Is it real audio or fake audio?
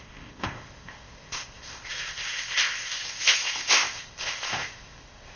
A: fake